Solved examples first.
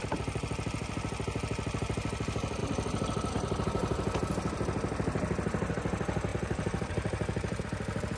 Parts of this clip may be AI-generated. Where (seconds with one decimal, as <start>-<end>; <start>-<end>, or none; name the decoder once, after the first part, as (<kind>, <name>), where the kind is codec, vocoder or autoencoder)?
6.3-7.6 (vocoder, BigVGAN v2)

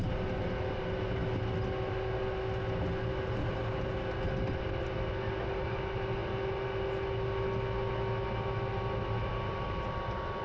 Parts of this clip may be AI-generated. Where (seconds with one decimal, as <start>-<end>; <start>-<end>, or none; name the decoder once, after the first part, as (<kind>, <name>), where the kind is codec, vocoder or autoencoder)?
none

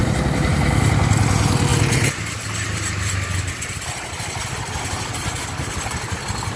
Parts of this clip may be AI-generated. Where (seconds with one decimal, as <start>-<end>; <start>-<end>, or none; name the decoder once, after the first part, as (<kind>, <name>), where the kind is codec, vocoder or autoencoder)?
none

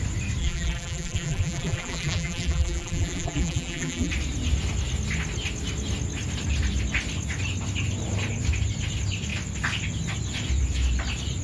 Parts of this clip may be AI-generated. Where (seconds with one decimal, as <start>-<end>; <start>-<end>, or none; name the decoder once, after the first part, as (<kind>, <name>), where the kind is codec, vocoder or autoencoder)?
0.4-4.1 (vocoder, BigVGAN v2)